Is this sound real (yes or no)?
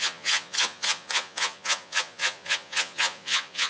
no